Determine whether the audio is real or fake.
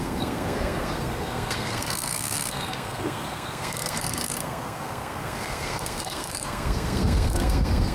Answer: fake